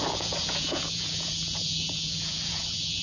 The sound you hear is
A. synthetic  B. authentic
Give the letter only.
A